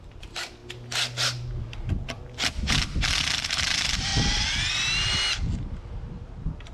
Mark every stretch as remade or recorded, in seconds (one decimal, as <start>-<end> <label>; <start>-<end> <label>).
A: 0.0-0.6 remade; 0.6-1.6 recorded; 1.6-4.1 remade; 4.1-6.0 recorded; 6.0-6.7 remade